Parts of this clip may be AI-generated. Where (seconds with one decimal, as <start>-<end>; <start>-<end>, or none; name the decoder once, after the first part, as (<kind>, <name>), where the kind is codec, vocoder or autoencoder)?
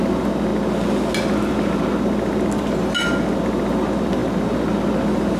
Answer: none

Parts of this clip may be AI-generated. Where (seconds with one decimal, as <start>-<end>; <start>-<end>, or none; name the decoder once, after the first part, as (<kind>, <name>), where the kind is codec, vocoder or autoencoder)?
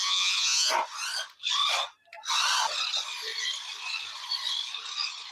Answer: 0.0-0.7 (vocoder, Vocos)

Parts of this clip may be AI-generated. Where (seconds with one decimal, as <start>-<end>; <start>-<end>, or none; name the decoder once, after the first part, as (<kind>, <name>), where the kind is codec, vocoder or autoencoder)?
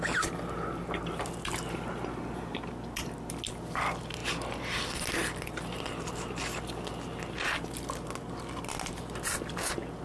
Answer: none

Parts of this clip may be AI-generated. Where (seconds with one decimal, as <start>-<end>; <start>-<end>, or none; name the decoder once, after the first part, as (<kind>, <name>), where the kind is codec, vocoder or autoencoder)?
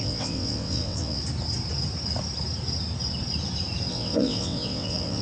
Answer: 0.0-1.2 (vocoder, WaveNeXt); 3.9-5.2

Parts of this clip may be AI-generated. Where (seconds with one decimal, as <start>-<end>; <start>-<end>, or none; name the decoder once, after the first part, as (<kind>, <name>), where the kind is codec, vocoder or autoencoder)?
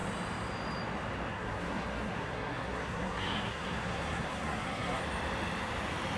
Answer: 1.3-5.0 (codec, SNAC)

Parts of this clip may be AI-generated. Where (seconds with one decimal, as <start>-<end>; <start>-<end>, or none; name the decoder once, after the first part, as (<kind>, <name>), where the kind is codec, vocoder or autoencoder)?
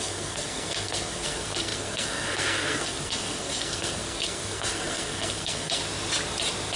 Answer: 0.0-5.8 (codec, SNAC)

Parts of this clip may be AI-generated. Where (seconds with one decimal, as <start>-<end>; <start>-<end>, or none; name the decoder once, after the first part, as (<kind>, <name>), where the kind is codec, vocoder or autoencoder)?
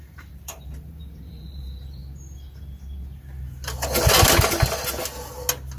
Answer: 0.0-2.0 (vocoder, BigVGAN v2)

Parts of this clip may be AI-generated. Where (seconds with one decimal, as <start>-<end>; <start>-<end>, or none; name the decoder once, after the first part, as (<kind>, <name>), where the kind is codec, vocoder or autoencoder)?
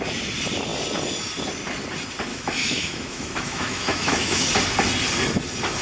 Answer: 2.3-4.5 (autoencoder, DAC-VAE)